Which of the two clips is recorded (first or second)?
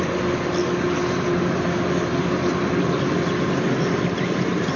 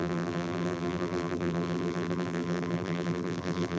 first